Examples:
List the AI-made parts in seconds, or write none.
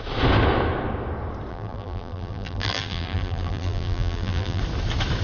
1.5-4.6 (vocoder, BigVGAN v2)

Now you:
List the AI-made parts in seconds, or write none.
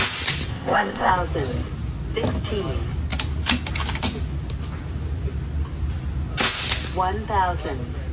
0.5-1.1 (codec, ZipCodec)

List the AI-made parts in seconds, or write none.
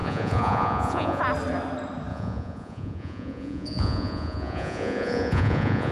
0.0-1.2 (vocoder, Vocos); 2.1-5.9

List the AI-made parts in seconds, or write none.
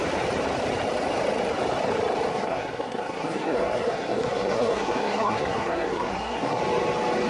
2.3-6.6 (codec, SNAC)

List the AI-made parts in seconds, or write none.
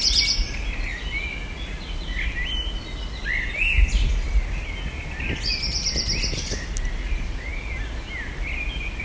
none